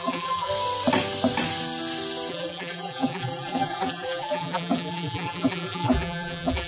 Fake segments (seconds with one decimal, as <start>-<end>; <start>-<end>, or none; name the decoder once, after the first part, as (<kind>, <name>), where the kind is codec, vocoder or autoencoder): 0.0-0.5 (vocoder, BigVGAN v2); 2.3-6.7